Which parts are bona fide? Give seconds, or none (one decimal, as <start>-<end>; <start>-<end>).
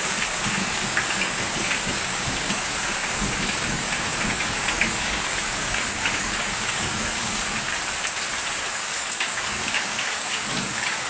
7.7-8.7